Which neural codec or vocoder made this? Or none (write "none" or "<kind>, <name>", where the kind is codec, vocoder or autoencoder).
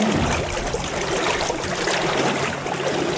none